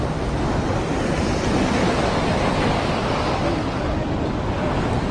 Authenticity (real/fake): real